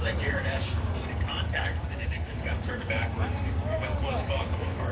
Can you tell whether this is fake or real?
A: fake